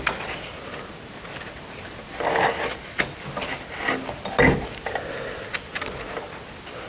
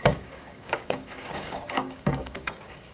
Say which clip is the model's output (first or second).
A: second